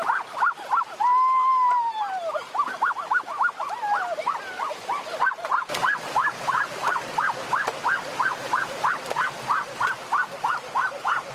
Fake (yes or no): no